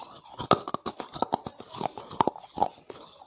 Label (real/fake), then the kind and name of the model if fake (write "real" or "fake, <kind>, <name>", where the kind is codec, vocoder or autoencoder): real